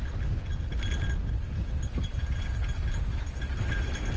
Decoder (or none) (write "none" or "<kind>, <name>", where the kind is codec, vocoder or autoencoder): none